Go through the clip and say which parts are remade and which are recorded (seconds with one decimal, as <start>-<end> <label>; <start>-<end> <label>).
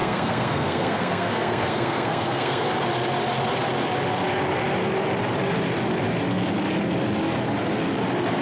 0.0-2.6 remade; 2.6-8.4 recorded